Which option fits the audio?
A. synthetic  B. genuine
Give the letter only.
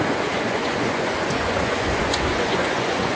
A